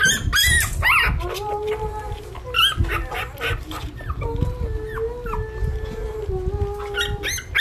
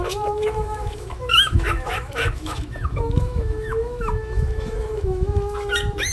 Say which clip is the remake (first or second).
second